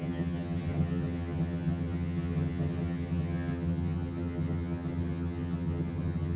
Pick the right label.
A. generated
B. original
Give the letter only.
A